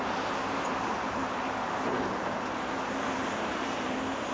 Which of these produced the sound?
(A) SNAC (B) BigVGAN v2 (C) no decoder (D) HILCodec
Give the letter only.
B